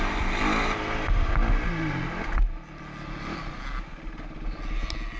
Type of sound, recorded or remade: recorded